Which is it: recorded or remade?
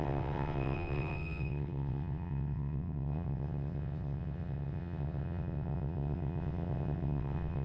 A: remade